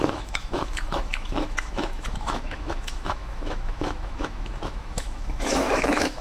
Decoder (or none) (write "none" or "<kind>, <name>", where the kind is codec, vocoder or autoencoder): autoencoder, DAC-VAE